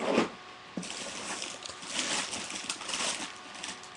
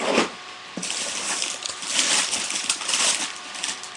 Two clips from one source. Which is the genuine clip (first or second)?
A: first